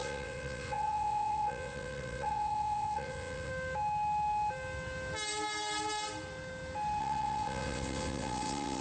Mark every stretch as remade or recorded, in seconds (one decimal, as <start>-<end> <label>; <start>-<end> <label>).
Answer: 0.0-3.5 remade; 3.5-7.0 recorded; 7.0-8.8 remade